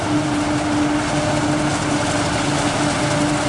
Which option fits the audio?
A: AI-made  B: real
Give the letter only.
B